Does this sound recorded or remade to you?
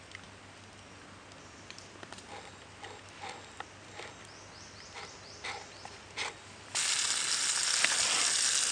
recorded